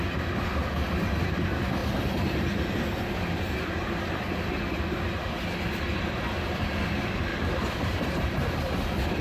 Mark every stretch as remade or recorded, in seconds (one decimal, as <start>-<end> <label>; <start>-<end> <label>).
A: 0.0-1.8 recorded; 1.8-3.0 remade; 3.0-7.3 recorded; 7.3-8.1 remade; 8.1-9.2 recorded